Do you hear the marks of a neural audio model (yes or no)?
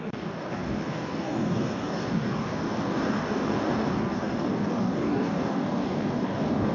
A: yes